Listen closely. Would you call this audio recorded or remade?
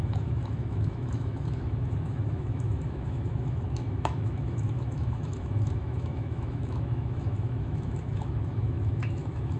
remade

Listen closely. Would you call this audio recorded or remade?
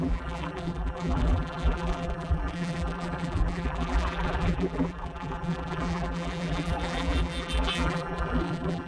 remade